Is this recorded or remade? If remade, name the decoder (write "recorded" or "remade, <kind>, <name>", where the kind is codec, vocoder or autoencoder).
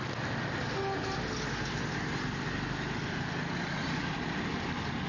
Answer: recorded